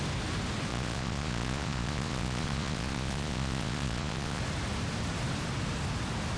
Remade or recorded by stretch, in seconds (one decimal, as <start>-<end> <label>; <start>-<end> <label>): 0.0-0.7 recorded; 0.7-4.4 remade; 4.4-6.4 recorded